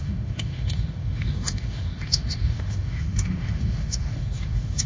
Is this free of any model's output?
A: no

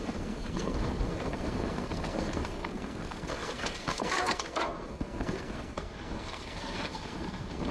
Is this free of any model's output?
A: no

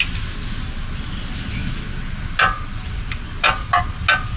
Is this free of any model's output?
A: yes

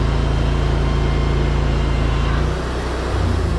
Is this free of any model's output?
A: yes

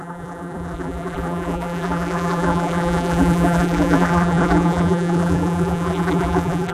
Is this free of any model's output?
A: no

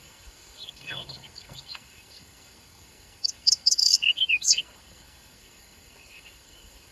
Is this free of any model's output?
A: no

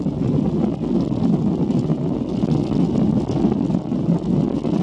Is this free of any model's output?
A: yes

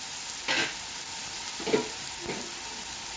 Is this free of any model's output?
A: yes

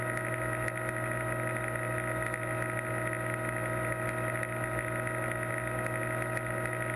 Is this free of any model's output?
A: yes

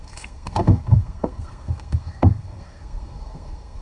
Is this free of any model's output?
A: no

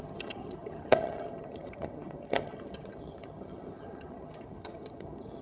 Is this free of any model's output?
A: no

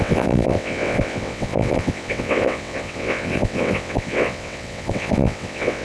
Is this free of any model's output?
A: no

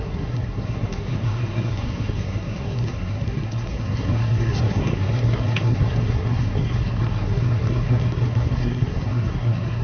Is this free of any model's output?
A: no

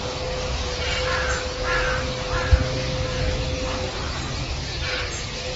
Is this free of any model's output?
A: yes